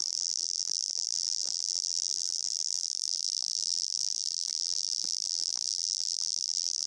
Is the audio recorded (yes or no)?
no